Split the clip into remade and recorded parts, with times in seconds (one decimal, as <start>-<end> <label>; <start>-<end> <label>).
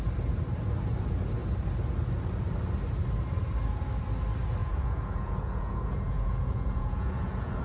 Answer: 0.0-4.6 recorded; 4.6-7.6 remade